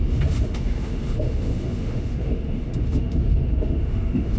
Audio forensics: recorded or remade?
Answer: remade